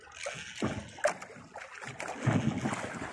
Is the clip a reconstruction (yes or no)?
no